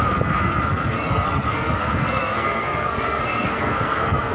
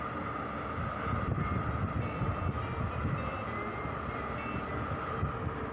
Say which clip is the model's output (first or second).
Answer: first